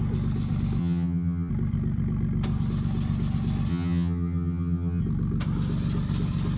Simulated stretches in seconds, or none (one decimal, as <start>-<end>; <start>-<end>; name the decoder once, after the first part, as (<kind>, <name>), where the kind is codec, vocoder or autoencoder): 0.8-1.5 (vocoder, HiFi-GAN); 3.7-5.0